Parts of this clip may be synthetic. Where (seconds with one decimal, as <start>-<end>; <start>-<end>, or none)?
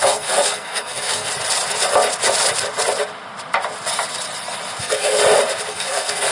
0.0-1.3; 4.8-5.2; 5.7-6.3